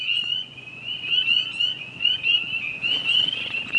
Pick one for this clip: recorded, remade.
remade